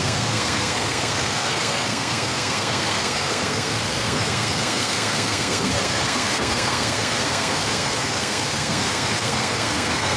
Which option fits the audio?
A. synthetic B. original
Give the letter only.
A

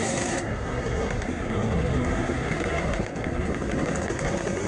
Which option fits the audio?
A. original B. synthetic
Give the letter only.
B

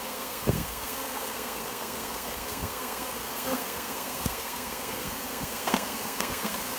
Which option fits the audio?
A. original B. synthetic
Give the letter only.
B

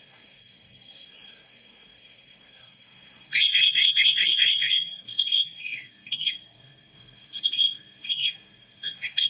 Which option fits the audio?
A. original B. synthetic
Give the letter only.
B